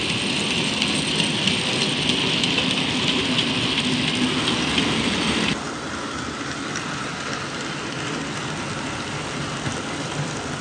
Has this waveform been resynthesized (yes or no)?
no